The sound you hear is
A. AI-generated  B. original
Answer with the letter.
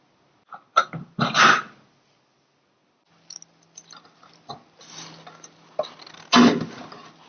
B